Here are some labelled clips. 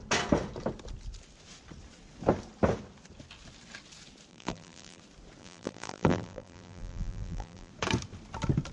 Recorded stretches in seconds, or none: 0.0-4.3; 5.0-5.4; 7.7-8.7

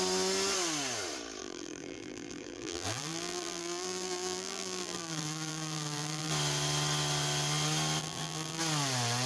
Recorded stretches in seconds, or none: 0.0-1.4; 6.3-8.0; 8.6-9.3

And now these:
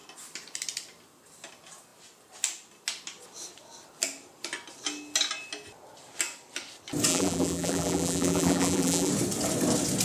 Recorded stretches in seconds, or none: 0.0-7.1; 9.1-10.0

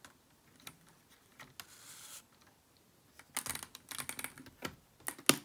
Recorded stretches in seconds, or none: 0.0-5.4

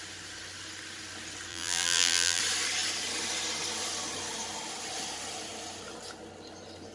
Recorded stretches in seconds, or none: 0.0-1.5; 2.4-6.9

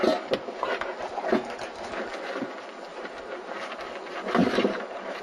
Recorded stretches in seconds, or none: 0.0-2.9; 3.7-4.4

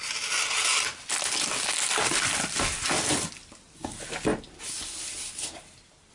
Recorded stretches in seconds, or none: 0.0-0.7; 3.3-6.1